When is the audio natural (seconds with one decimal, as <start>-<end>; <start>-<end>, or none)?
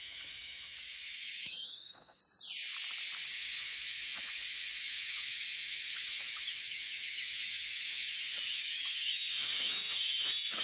2.2-3.3